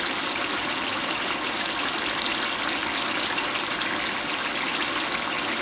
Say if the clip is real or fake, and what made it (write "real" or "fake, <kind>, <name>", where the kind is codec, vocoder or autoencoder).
real